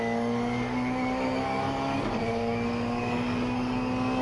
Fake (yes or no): yes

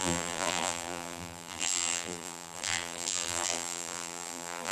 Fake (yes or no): yes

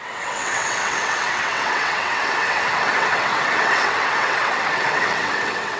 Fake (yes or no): yes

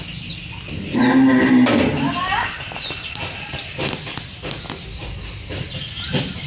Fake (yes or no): no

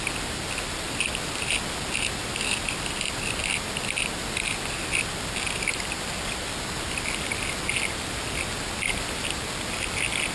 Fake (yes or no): no